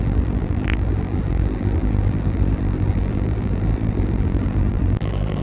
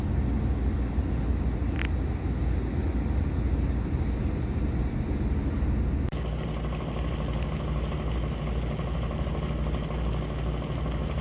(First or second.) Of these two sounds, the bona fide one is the second